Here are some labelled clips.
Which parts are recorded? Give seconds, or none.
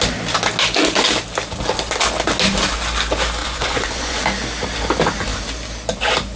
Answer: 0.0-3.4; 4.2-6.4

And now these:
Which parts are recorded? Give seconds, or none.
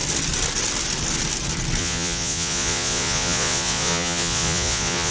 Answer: 0.0-1.8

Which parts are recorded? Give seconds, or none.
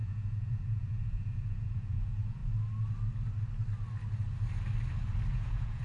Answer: 2.4-5.3